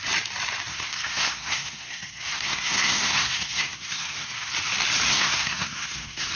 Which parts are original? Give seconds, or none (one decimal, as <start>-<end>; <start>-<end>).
0.0-0.7; 4.5-5.1